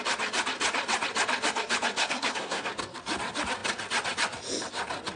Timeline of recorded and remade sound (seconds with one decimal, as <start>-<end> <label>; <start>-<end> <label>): 0.0-2.0 recorded; 2.0-2.7 remade; 2.7-5.2 recorded